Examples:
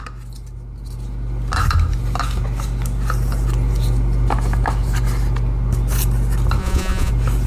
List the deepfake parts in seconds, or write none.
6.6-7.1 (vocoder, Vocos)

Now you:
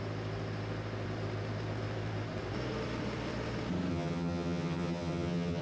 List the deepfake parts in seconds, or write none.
3.9-5.6 (vocoder, HiFi-GAN)

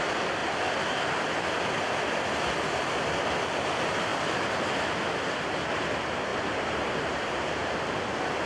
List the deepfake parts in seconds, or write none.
6.3-7.8 (vocoder, BigVGAN v2)

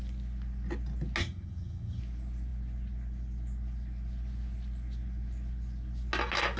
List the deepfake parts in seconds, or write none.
1.2-2.0 (vocoder, HiFi-GAN)

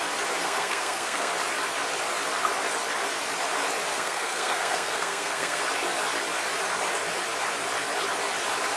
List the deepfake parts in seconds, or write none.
0.4-1.3 (codec, SNAC); 3.9-5.6

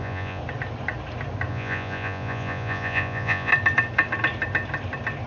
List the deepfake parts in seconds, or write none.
0.0-0.4 (vocoder, Vocos); 1.5-3.5